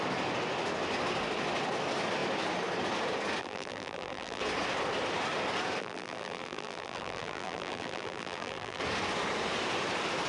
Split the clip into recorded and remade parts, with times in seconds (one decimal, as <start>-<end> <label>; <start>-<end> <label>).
0.0-3.4 recorded; 3.4-4.4 remade; 4.4-5.8 recorded; 5.8-8.8 remade; 8.8-10.3 recorded